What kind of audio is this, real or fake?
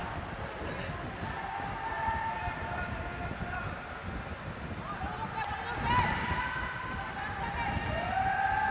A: real